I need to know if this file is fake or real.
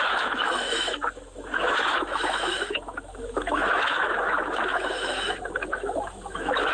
fake